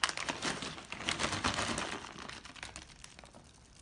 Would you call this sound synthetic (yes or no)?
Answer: no